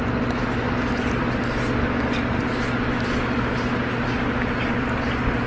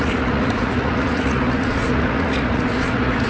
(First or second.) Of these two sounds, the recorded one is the first